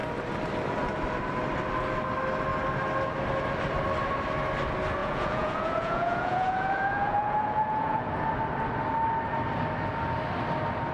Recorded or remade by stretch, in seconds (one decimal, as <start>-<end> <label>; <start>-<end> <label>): 0.0-5.0 recorded; 5.0-8.1 remade; 8.1-10.9 recorded

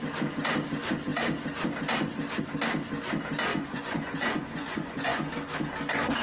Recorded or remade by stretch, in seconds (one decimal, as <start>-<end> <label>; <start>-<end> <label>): 0.0-3.5 recorded; 3.5-5.3 remade; 5.3-6.2 recorded

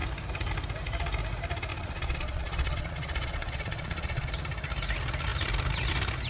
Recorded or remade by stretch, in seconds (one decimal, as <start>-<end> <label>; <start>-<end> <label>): 0.0-1.7 recorded; 1.7-4.3 remade; 4.3-6.3 recorded

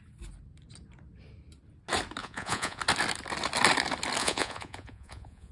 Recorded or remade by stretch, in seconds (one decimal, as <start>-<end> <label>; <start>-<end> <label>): 0.0-2.2 recorded; 2.2-2.8 remade; 2.8-4.2 recorded; 4.2-5.5 remade

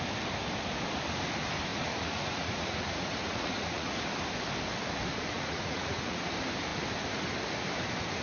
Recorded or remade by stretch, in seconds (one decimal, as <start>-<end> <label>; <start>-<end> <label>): 0.0-1.7 recorded; 1.7-3.9 remade; 3.9-5.1 recorded; 5.1-6.3 remade; 6.3-8.2 recorded

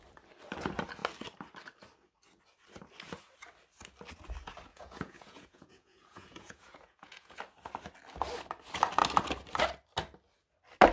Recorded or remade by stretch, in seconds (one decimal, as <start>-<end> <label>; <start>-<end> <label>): 0.0-4.7 recorded; 4.7-7.4 remade; 7.4-10.9 recorded

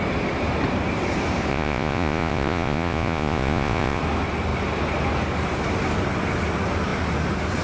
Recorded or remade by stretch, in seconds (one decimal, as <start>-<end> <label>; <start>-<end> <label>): 0.0-1.5 recorded; 1.5-4.0 remade; 4.0-7.6 recorded

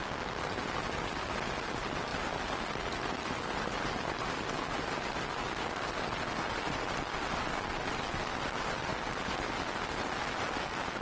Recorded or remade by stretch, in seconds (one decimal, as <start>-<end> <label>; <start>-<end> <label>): 0.0-11.0 recorded